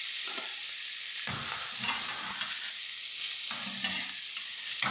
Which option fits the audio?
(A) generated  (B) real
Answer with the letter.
B